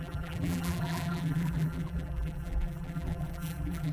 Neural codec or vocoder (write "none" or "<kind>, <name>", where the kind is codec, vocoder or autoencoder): vocoder, BigVGAN v2